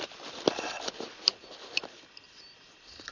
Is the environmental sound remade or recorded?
recorded